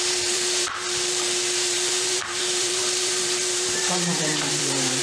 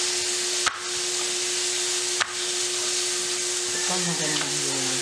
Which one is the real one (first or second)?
second